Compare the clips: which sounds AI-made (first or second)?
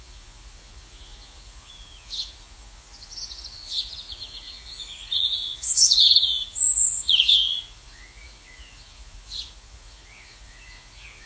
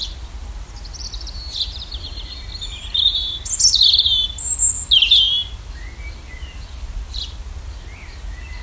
first